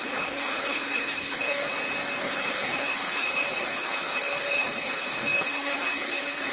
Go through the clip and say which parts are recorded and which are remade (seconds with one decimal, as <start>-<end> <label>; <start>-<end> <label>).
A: 0.0-1.7 remade; 1.7-2.2 recorded; 2.2-6.5 remade